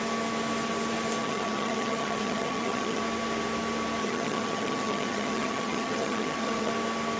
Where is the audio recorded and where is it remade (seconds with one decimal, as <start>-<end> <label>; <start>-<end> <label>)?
0.0-1.2 recorded; 1.2-3.0 remade; 3.0-4.0 recorded; 4.0-6.7 remade; 6.7-7.2 recorded